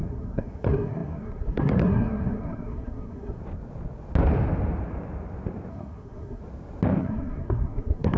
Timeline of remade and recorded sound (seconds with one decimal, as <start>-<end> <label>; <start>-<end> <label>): 0.0-3.4 remade; 3.4-5.7 recorded; 5.7-6.4 remade; 6.4-7.0 recorded; 7.0-8.2 remade